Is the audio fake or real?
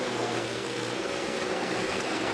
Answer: fake